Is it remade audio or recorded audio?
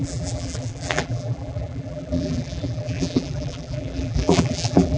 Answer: remade